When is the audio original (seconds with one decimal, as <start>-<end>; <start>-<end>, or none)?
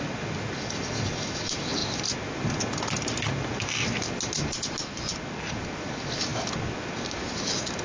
0.0-7.8